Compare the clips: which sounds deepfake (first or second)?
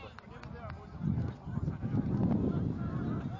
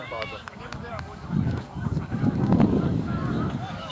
second